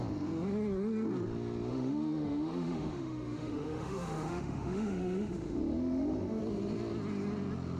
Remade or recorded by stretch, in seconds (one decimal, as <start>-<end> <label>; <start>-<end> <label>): 0.0-1.7 recorded; 1.7-6.4 remade; 6.4-7.8 recorded